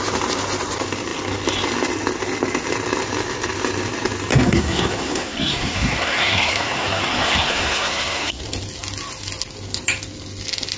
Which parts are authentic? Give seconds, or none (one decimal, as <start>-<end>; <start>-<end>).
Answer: 0.0-4.3; 8.4-10.8